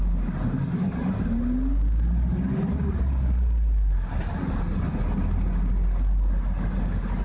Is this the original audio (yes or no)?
yes